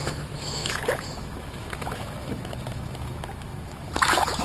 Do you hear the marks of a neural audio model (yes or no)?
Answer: yes